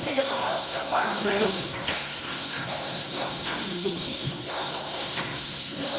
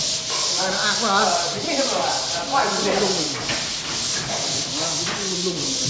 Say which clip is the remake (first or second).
first